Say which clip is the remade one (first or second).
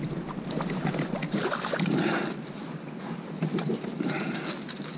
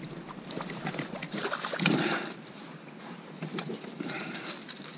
second